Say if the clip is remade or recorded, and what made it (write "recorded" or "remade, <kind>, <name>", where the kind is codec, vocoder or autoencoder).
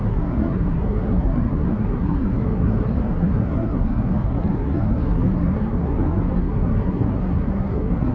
remade, codec, SNAC